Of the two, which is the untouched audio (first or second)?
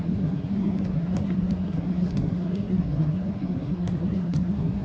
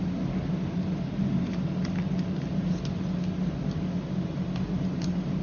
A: second